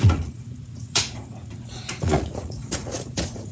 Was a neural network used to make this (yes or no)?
yes